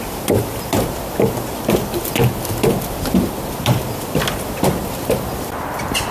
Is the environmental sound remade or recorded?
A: remade